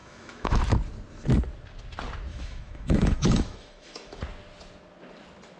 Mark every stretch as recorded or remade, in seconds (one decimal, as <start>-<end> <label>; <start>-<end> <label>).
0.0-0.6 remade; 0.6-2.3 recorded; 2.3-4.2 remade; 4.2-5.6 recorded